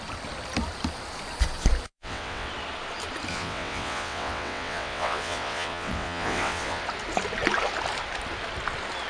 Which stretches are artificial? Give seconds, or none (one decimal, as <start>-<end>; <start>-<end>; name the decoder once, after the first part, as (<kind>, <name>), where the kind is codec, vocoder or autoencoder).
1.9-2.5 (vocoder, WaveNeXt); 3.3-6.8